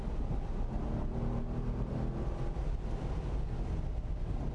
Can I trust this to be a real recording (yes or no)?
yes